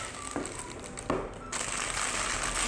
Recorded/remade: recorded